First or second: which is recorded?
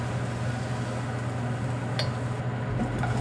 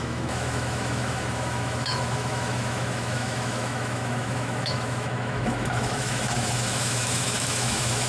first